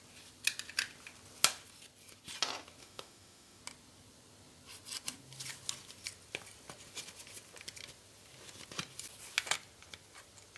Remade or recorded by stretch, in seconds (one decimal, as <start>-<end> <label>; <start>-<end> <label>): 0.0-2.8 recorded; 2.8-3.6 remade; 3.6-10.6 recorded